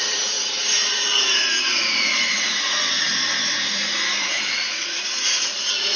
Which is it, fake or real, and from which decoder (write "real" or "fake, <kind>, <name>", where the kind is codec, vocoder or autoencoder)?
fake, vocoder, Vocos